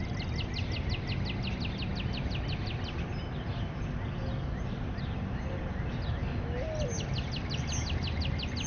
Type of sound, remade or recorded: recorded